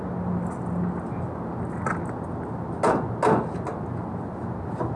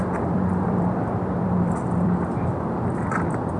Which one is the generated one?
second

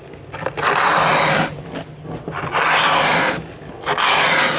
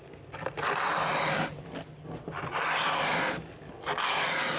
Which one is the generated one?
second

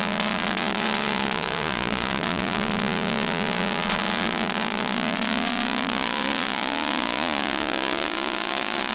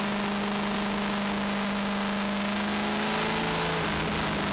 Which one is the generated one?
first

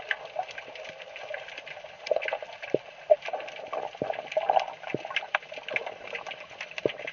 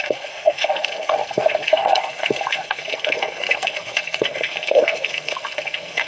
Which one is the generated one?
second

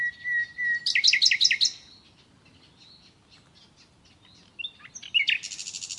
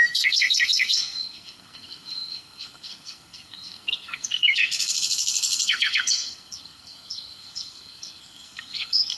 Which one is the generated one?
second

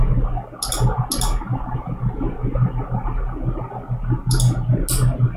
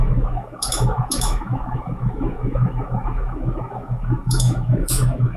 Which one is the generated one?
second